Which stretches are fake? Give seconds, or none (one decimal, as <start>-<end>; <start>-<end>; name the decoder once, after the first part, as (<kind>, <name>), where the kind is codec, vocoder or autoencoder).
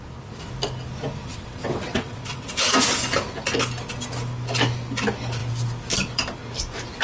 1.2-2.8 (vocoder, WaveNeXt)